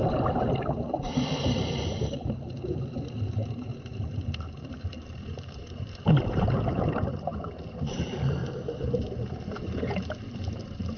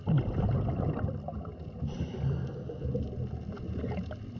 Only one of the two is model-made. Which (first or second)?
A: first